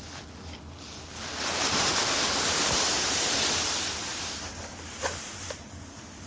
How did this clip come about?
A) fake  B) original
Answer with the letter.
B